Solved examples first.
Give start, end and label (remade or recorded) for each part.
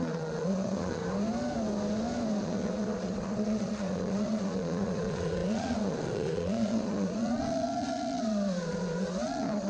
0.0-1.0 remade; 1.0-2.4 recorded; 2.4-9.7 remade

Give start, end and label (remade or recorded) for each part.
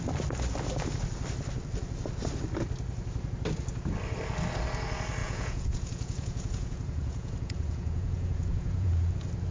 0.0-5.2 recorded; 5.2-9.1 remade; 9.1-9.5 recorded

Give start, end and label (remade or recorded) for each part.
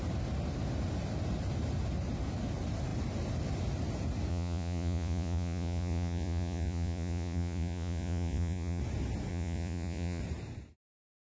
0.0-4.3 recorded; 4.3-8.8 remade; 8.8-9.3 recorded; 9.3-10.2 remade; 10.2-11.3 recorded